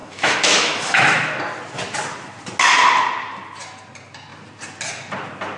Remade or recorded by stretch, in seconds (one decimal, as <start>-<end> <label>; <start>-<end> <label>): 0.0-1.4 remade; 1.4-5.6 recorded